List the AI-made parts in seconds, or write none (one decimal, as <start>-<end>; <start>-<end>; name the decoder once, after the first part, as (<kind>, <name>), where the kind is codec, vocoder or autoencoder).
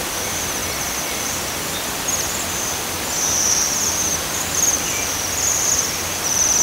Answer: 0.6-1.3 (vocoder, BigVGAN v2); 4.1-5.7